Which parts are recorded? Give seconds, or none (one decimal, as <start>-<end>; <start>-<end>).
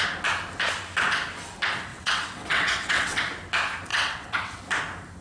0.0-1.9; 3.2-3.9; 4.6-5.2